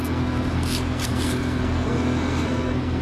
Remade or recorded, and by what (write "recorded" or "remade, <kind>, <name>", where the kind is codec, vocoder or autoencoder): remade, codec, SNAC